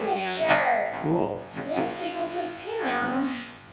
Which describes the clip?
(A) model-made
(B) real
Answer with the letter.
A